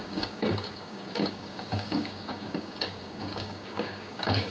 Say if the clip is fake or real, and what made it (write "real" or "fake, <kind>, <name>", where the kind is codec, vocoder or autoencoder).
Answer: fake, codec, DAC